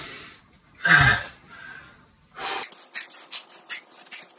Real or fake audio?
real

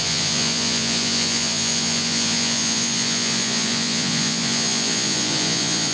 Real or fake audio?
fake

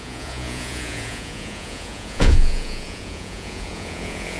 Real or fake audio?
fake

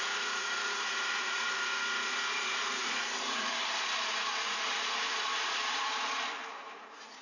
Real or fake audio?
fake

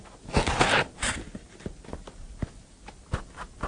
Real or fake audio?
real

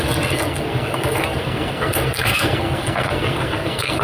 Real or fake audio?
fake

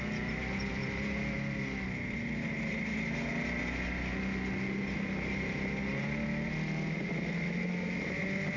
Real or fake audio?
real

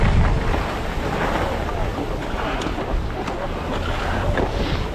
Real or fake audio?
real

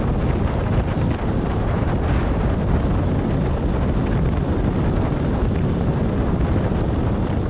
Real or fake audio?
real